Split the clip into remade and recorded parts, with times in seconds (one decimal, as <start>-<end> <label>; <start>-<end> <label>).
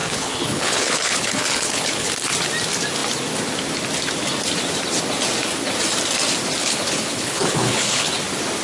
0.0-2.1 remade; 2.1-6.6 recorded; 6.6-8.1 remade; 8.1-8.6 recorded